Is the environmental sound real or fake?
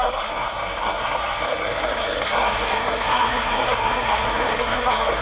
fake